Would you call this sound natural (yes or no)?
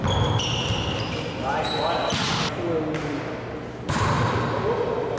yes